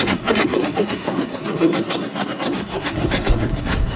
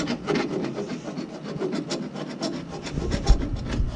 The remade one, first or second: first